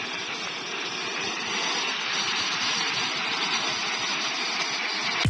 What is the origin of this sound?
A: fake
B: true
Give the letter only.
B